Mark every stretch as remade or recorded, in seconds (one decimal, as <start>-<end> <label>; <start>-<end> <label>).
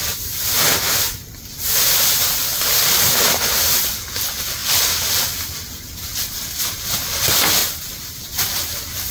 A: 0.0-2.5 recorded; 2.5-3.8 remade; 3.8-7.6 recorded; 7.6-8.2 remade; 8.2-9.1 recorded